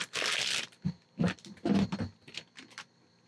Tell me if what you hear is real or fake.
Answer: real